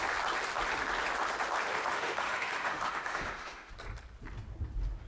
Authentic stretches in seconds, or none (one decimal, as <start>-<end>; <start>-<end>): 0.0-1.7; 3.7-5.1